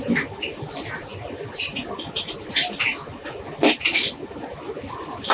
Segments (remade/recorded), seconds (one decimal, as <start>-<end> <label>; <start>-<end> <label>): 0.0-5.3 recorded